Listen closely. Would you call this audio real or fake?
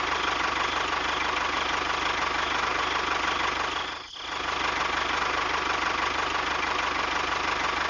real